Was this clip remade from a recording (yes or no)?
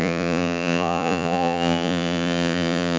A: yes